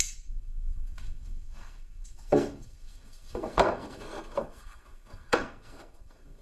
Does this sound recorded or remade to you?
remade